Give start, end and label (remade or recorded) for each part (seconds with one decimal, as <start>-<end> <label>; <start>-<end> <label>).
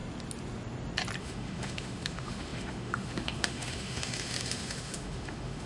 0.0-1.2 recorded; 1.2-5.7 remade